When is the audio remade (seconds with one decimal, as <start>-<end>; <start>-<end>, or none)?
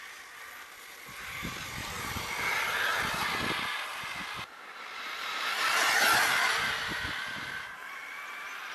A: none